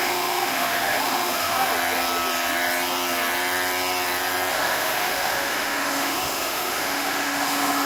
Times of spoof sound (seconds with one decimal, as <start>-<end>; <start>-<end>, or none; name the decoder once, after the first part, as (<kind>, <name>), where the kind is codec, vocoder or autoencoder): 0.0-1.7 (autoencoder, DAC-VAE); 4.5-7.9